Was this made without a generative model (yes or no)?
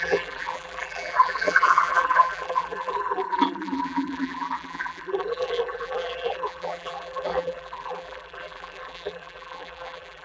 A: no